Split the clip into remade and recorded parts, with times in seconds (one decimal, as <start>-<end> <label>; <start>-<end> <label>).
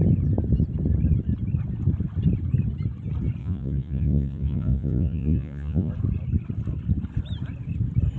0.0-3.4 recorded; 3.4-5.9 remade; 5.9-8.2 recorded